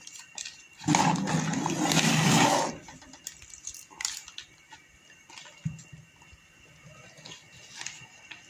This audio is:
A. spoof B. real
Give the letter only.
B